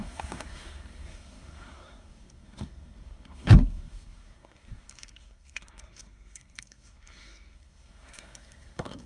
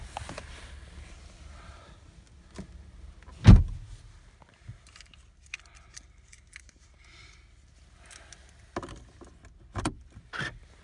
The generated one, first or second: first